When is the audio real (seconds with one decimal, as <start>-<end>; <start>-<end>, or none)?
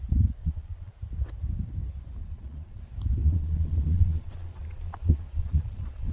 0.0-0.4; 0.9-2.2; 2.8-3.2